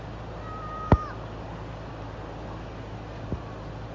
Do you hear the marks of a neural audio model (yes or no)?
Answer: no